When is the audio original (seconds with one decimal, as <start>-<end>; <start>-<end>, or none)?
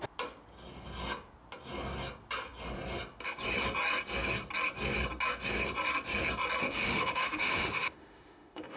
0.0-6.6